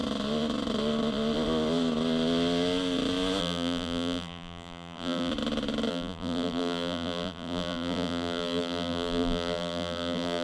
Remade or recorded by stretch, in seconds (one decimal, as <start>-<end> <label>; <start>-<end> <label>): 0.0-3.4 recorded; 3.4-5.3 remade; 5.3-5.9 recorded; 5.9-10.4 remade